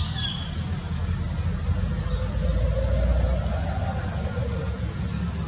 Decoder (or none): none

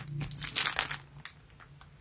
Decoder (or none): none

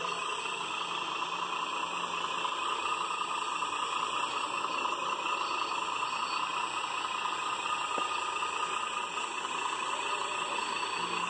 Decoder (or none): none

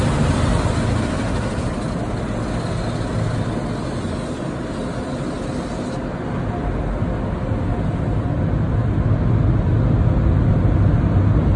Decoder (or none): none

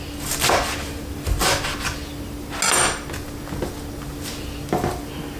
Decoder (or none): none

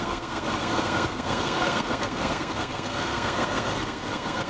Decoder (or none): codec, SNAC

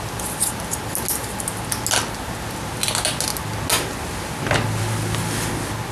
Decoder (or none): none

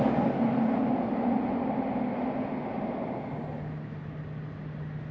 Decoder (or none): none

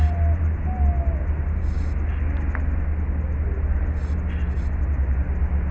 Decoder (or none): none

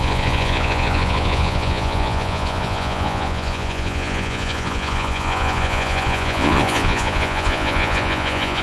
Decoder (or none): vocoder, Vocos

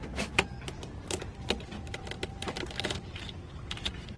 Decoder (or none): none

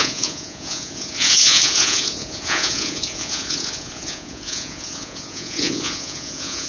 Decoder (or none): vocoder, Vocos